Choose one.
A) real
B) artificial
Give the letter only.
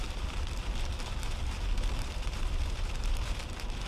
B